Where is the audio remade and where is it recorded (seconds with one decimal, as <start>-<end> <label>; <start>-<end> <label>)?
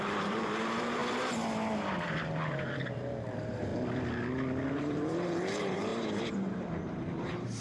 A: 0.0-1.0 remade; 1.0-3.3 recorded; 3.3-3.7 remade; 3.7-4.7 recorded; 4.7-7.6 remade